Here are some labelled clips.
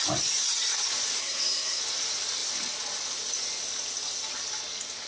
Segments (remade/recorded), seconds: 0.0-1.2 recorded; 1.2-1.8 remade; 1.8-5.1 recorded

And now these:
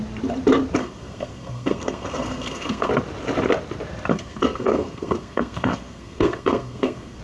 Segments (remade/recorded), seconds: 0.0-0.8 recorded; 0.8-2.9 remade; 2.9-4.1 recorded; 4.1-7.2 remade

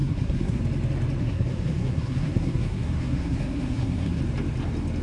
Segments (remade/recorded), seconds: 0.0-0.6 remade; 0.6-1.2 recorded; 1.2-4.2 remade; 4.2-5.0 recorded

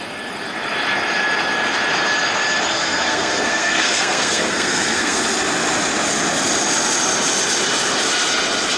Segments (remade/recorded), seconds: 0.0-2.7 recorded; 2.7-5.2 remade; 5.2-8.8 recorded

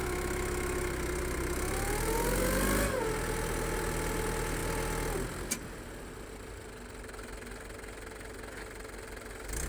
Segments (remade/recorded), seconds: 0.0-9.7 recorded

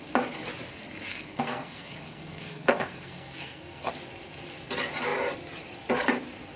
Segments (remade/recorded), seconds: 0.0-1.1 recorded; 1.1-3.9 remade; 3.9-6.6 recorded

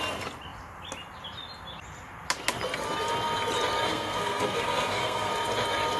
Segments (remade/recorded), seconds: 0.0-3.9 recorded; 3.9-5.3 remade; 5.3-6.0 recorded

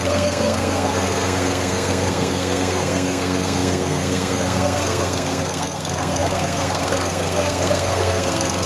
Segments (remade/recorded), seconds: 0.0-8.7 remade